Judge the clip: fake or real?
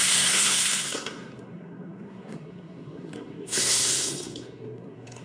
fake